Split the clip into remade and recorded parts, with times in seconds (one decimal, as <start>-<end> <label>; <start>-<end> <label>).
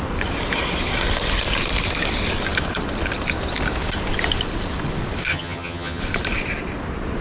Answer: 0.0-5.3 recorded; 5.3-6.0 remade; 6.0-7.2 recorded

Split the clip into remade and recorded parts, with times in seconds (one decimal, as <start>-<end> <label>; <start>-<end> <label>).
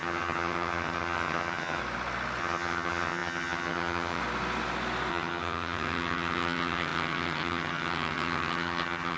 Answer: 0.0-1.8 remade; 1.8-2.4 recorded; 2.4-4.2 remade; 4.2-5.1 recorded; 5.1-9.2 remade